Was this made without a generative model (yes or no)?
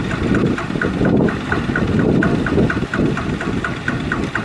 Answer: yes